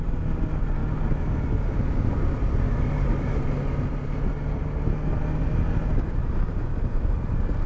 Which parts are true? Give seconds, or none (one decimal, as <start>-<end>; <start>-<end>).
0.0-7.7